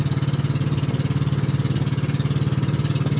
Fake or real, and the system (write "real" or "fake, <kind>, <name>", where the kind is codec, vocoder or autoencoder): real